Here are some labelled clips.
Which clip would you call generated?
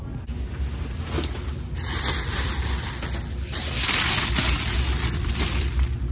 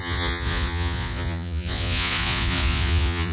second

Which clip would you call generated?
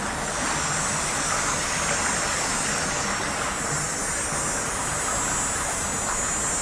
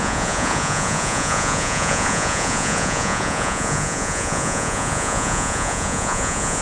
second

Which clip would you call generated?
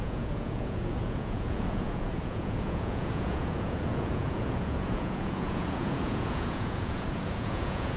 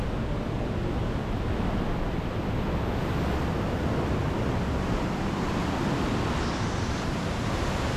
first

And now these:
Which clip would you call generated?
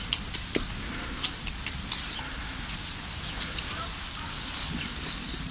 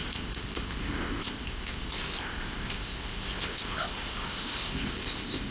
second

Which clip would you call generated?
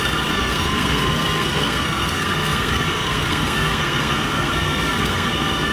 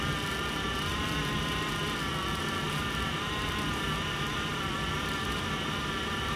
first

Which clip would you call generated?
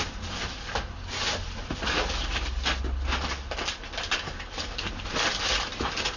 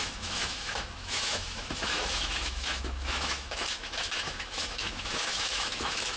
second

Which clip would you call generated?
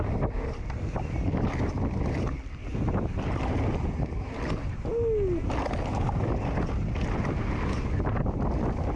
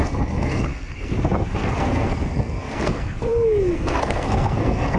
second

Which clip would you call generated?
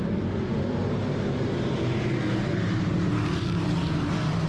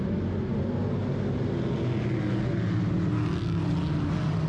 first